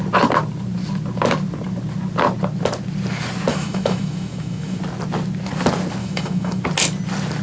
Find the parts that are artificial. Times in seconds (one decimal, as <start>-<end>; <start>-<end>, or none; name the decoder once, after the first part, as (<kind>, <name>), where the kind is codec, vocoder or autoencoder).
3.5-4.8 (autoencoder, DAC-VAE); 6.0-6.6